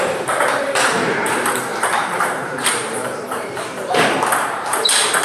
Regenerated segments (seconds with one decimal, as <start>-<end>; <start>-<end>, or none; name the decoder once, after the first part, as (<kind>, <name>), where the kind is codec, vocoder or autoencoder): 0.0-5.2 (vocoder, BigVGAN v2)